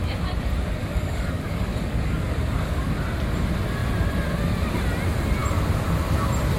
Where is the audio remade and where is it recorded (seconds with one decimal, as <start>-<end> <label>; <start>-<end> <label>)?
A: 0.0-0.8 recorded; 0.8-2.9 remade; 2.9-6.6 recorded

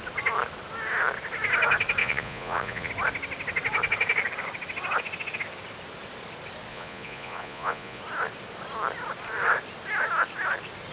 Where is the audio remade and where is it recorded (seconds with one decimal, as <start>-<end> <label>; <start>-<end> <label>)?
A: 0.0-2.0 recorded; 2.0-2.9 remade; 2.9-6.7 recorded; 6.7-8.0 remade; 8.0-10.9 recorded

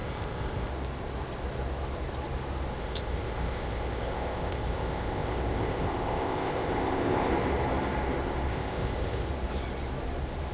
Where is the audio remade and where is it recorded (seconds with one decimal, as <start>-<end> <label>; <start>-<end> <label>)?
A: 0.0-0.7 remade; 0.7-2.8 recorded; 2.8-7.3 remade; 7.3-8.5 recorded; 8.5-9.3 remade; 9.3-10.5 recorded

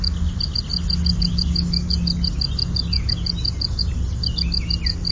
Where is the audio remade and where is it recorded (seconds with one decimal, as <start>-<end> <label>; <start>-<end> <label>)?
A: 0.0-5.1 recorded

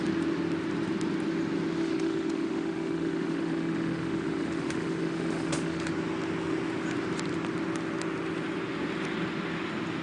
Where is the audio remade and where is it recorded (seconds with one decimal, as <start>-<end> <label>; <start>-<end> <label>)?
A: 0.0-1.8 recorded; 1.8-5.9 remade; 5.9-10.0 recorded

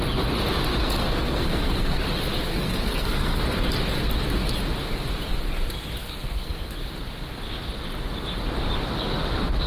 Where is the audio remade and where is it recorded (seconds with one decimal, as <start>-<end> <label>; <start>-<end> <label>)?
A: 0.0-0.8 recorded; 0.8-2.0 remade; 2.0-2.5 recorded; 2.5-3.4 remade; 3.4-6.0 recorded; 6.0-6.9 remade; 6.9-9.7 recorded

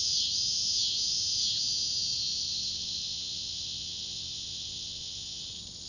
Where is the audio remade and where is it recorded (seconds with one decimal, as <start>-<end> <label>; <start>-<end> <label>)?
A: 0.0-2.3 recorded; 2.3-5.4 remade; 5.4-5.9 recorded

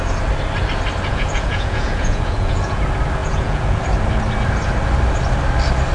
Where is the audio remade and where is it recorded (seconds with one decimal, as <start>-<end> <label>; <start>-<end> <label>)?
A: 0.0-1.1 recorded; 1.1-2.8 remade; 2.8-3.2 recorded; 3.2-3.8 remade; 3.8-5.9 recorded